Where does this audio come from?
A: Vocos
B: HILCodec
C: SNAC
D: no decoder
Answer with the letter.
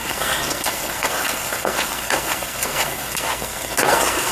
C